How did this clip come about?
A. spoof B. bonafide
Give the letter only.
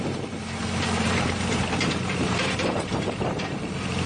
A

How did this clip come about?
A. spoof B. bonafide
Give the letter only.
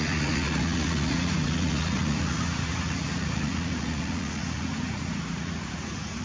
A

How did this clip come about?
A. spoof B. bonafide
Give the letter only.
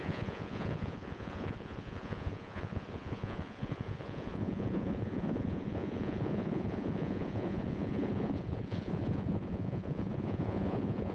A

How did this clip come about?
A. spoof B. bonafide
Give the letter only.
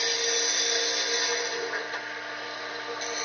B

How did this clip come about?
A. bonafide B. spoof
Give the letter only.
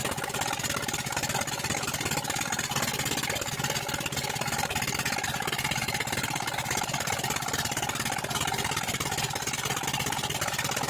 A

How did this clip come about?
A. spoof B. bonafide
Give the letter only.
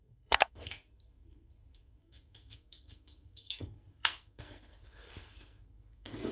A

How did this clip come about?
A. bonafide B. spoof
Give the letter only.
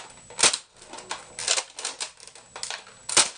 A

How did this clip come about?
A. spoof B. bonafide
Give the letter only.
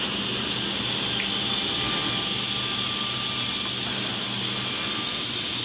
B